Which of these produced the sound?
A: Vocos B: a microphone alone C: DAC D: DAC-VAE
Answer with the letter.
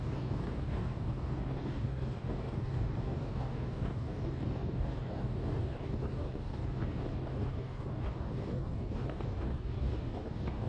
C